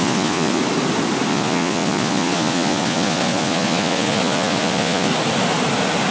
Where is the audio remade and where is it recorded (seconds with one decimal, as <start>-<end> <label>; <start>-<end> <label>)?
0.0-0.6 remade; 0.6-1.3 recorded; 1.3-5.1 remade; 5.1-6.1 recorded